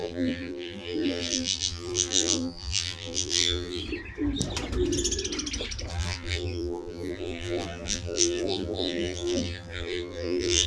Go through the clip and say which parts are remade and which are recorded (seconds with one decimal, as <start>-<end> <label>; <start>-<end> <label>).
0.0-3.8 remade; 3.8-5.9 recorded; 5.9-10.7 remade